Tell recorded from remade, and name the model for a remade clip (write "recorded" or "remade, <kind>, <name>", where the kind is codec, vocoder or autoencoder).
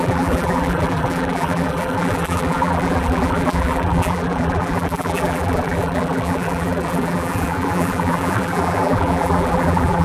remade, vocoder, BigVGAN v2